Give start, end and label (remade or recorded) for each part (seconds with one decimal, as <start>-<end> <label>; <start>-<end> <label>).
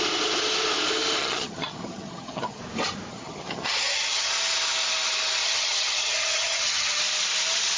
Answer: 0.0-1.2 recorded; 1.2-2.6 remade; 2.6-3.1 recorded; 3.1-4.3 remade; 4.3-5.4 recorded; 5.4-7.0 remade; 7.0-7.8 recorded